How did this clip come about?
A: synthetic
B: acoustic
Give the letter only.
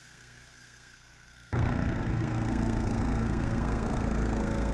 A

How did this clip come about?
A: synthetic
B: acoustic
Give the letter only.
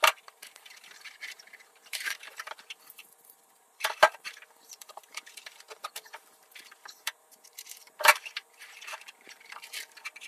A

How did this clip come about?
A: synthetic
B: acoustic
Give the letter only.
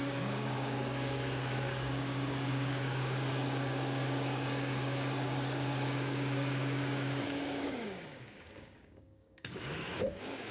A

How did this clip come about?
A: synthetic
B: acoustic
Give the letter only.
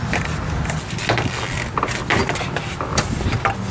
B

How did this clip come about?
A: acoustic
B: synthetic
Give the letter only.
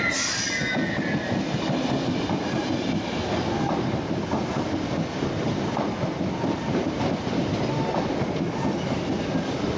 A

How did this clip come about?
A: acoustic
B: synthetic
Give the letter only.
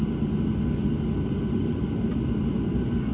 A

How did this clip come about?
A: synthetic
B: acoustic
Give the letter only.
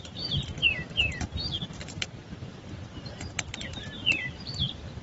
A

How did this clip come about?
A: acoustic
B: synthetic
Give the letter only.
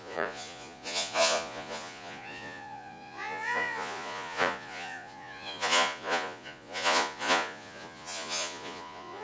B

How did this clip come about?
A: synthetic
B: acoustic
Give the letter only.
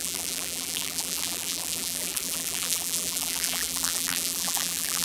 A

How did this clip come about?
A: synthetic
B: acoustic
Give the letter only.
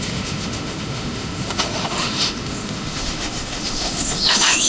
A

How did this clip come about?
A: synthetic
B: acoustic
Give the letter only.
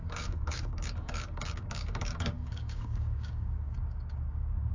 A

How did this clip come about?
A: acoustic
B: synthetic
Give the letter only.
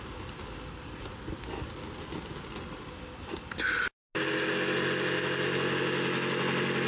A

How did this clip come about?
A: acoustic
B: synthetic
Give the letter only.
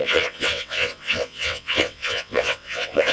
B